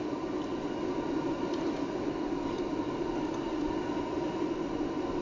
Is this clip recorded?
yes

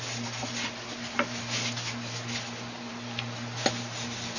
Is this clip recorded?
yes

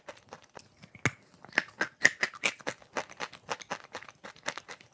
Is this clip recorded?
yes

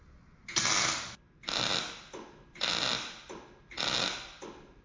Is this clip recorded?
yes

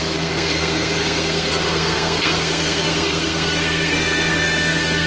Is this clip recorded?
no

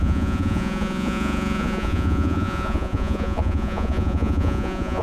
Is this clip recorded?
no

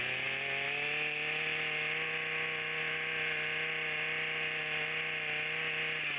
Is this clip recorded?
yes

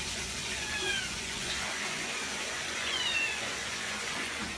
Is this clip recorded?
no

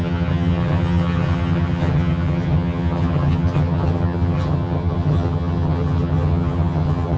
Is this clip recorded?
no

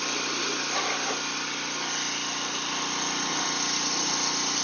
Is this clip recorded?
yes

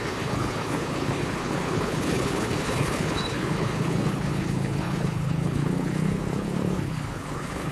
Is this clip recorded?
no